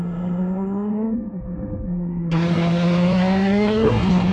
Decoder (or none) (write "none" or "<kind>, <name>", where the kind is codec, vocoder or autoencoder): codec, SNAC